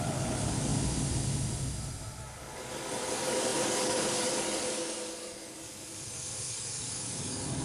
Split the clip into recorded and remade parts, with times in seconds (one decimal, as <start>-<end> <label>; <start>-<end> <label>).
0.0-0.7 remade; 0.7-2.2 recorded; 2.2-7.6 remade